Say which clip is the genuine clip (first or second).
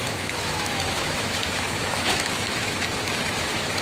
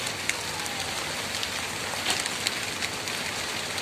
second